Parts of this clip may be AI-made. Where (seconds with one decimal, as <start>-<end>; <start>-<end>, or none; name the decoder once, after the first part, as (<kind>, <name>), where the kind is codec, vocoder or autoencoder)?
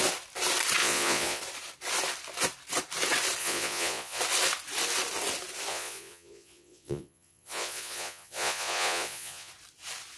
0.8-1.4 (vocoder, Vocos); 3.4-4.2; 5.7-9.5